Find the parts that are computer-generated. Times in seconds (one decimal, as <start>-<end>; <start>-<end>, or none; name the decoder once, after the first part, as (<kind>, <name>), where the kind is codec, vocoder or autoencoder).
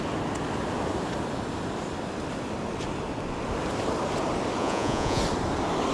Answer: 4.6-5.2 (vocoder, Vocos)